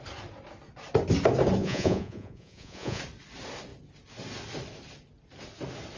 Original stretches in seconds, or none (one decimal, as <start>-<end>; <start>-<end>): 0.0-1.6; 3.0-6.0